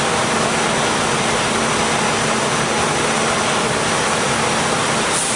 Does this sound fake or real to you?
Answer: real